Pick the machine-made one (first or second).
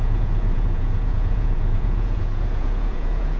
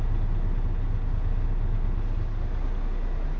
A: first